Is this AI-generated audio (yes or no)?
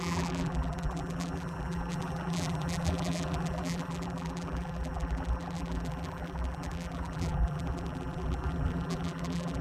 yes